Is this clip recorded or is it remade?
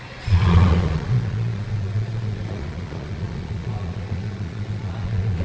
remade